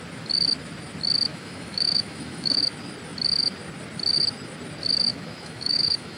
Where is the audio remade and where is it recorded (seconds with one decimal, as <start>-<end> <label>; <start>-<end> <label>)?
0.0-1.3 recorded; 1.3-2.6 remade; 2.6-5.1 recorded; 5.1-6.2 remade